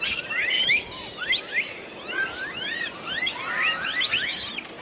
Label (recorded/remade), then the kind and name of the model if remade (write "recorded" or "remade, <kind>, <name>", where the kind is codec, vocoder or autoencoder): recorded